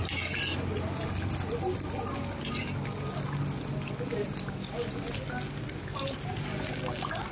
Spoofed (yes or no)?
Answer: no